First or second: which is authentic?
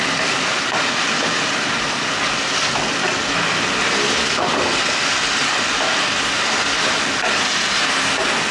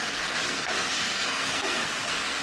first